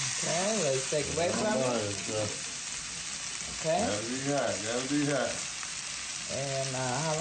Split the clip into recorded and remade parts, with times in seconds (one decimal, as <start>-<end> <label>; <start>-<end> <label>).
0.0-7.2 recorded